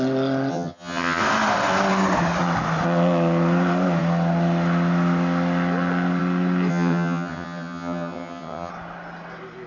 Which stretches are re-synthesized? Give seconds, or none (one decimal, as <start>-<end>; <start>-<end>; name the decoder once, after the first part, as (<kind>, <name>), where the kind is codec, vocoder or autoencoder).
0.5-1.2 (vocoder, HiFi-GAN); 6.7-8.7